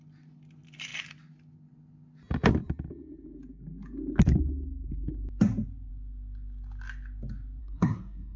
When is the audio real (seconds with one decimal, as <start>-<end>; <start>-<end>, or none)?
0.0-7.6